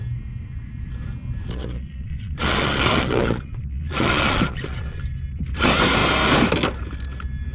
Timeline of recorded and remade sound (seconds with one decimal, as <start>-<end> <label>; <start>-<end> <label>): 0.0-1.4 recorded; 1.4-5.0 remade; 5.0-7.5 recorded